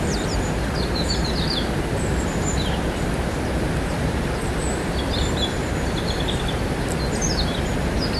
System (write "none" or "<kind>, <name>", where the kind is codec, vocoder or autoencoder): vocoder, BigVGAN v2